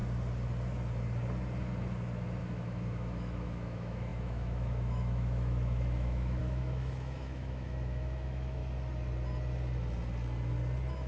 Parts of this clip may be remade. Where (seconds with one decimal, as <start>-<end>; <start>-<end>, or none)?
2.4-8.6